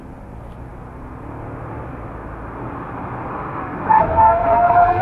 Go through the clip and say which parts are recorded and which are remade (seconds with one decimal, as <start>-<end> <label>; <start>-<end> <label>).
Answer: 0.0-3.3 recorded; 3.3-3.8 remade; 3.8-4.2 recorded; 4.2-5.0 remade